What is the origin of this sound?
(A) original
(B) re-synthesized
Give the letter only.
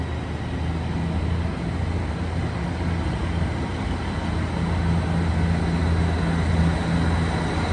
A